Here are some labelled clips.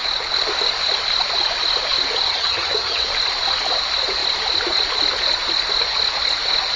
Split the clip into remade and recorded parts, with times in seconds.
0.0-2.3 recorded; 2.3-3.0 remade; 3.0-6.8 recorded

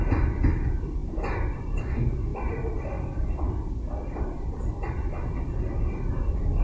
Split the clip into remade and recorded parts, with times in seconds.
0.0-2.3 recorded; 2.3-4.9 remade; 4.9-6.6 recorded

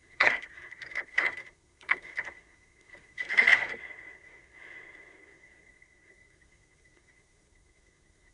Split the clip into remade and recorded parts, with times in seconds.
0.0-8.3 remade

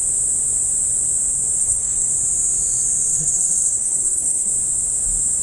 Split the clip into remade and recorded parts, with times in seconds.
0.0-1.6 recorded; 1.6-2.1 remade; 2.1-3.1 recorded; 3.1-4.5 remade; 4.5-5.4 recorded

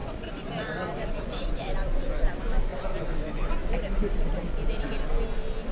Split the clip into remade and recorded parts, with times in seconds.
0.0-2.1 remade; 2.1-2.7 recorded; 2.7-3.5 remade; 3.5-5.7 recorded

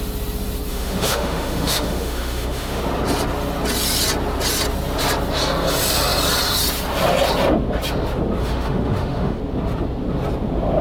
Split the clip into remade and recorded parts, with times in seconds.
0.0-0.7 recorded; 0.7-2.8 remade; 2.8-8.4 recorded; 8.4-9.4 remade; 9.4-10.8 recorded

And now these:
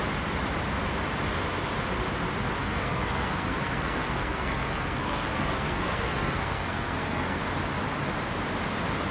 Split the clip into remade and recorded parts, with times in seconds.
0.0-2.6 recorded; 2.6-7.4 remade; 7.4-9.1 recorded

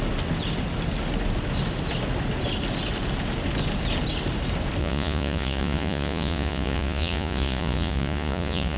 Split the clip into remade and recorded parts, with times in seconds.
0.0-4.8 recorded; 4.8-8.8 remade